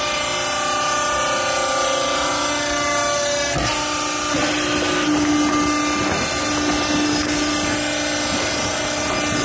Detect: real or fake real